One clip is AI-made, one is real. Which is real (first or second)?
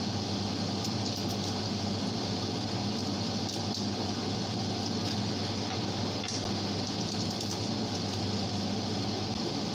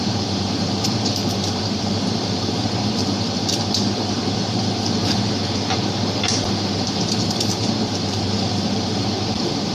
first